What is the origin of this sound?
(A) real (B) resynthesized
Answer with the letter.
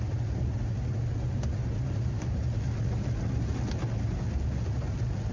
A